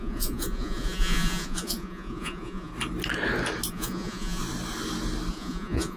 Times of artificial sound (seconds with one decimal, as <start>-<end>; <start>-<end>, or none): 0.0-2.7; 3.7-4.4; 5.3-6.0